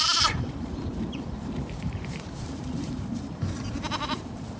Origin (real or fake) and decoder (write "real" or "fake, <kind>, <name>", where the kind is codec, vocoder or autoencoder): fake, vocoder, BigVGAN v2